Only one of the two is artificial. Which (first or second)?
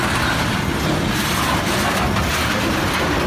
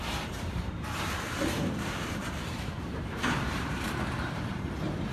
second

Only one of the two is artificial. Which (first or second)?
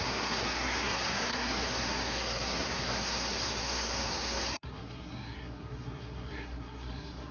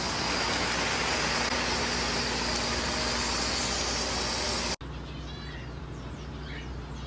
first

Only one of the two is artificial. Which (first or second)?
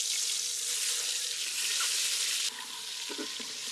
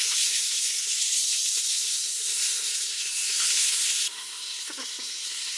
second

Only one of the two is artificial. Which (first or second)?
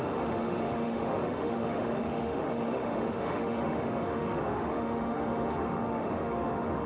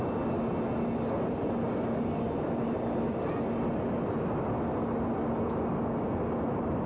first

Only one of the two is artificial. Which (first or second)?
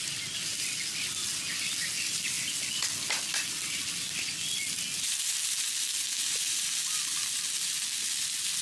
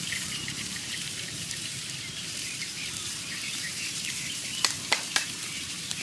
second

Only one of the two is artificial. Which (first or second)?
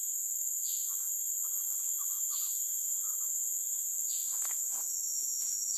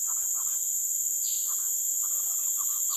first